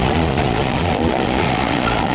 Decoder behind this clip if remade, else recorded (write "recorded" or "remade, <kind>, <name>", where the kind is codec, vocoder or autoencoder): remade, vocoder, Vocos